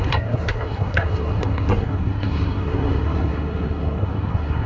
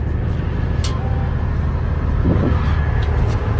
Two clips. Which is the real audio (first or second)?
second